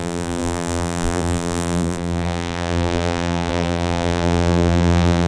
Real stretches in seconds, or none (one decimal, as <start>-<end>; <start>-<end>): none